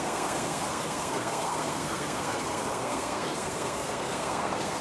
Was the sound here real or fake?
fake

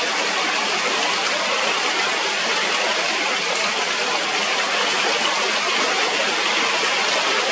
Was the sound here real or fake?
real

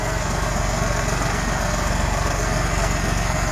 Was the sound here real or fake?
fake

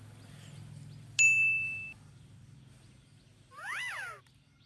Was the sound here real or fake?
real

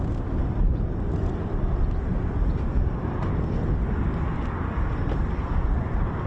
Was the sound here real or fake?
real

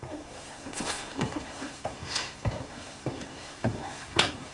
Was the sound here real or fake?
fake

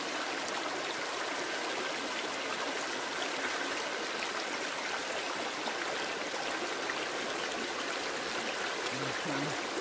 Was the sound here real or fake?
real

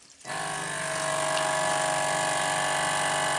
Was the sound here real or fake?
real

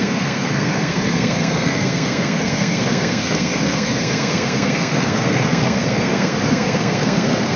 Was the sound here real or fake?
fake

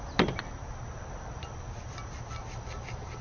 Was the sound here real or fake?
real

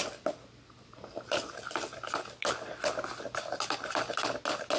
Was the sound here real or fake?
real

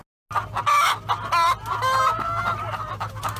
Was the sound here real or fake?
real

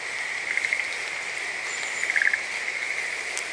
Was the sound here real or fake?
real